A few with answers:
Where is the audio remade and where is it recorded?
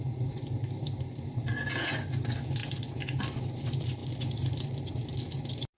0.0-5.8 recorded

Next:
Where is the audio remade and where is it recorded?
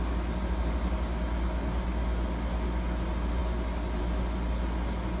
0.0-5.2 recorded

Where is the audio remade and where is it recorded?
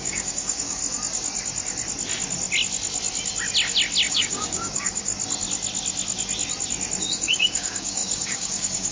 0.0-0.8 remade; 0.8-4.1 recorded; 4.1-5.1 remade; 5.1-7.0 recorded; 7.0-8.9 remade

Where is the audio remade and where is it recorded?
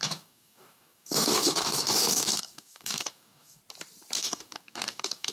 0.0-3.6 remade; 3.6-4.2 recorded; 4.2-5.3 remade